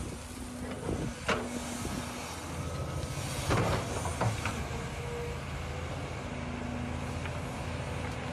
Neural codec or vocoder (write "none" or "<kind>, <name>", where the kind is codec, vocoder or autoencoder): none